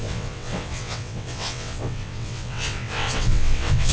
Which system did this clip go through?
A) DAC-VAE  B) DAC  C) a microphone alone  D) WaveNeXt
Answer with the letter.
D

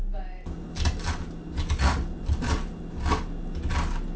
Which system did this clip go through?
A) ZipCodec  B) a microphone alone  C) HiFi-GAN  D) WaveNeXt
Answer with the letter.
B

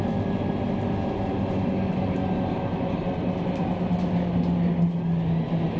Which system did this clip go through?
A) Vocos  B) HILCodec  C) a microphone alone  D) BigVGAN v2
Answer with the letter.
C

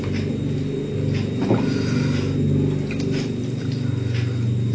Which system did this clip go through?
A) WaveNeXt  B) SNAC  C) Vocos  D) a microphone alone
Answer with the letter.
D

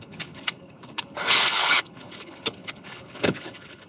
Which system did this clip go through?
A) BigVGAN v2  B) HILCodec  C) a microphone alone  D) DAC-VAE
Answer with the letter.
B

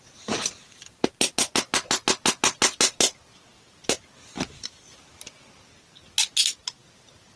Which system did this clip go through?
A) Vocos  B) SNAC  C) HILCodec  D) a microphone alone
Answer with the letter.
D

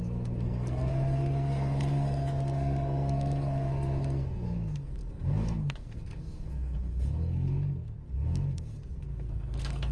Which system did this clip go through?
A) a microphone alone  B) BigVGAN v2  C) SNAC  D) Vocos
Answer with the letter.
C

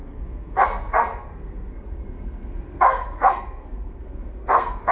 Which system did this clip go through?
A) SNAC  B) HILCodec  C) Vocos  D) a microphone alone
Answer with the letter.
A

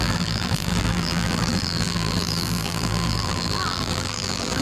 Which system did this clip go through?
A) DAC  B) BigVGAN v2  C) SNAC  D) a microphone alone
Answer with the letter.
B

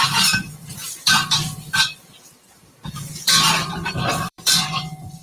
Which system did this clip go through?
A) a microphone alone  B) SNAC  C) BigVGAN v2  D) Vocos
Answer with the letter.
C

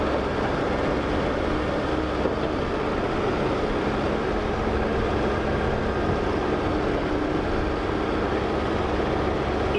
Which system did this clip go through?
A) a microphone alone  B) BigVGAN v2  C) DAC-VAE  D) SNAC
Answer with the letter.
A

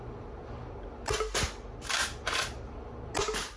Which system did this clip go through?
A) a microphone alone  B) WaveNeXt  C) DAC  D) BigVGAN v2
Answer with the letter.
A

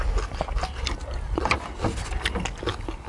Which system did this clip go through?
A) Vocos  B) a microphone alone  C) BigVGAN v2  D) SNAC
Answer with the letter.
B